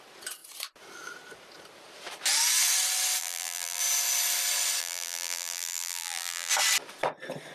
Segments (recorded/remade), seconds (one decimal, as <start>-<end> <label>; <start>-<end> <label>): 0.0-3.2 recorded; 3.2-3.8 remade; 3.8-4.8 recorded; 4.8-6.5 remade; 6.5-7.5 recorded